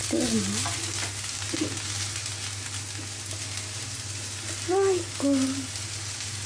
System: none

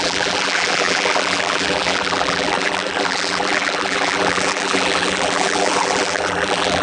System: vocoder, BigVGAN v2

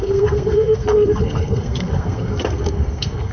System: codec, SNAC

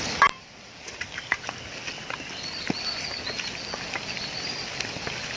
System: none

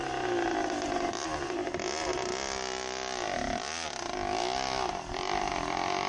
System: none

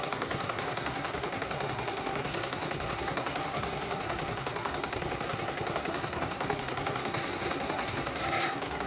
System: codec, SNAC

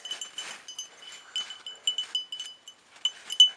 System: none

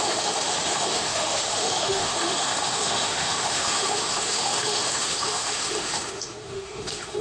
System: autoencoder, DAC-VAE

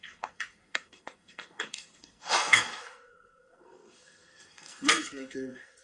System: codec, SNAC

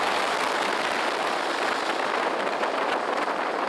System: none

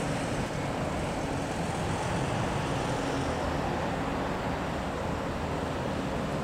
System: none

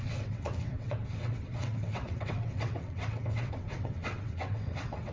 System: vocoder, WaveNeXt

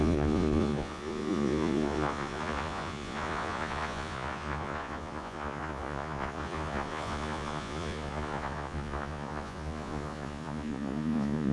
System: vocoder, Vocos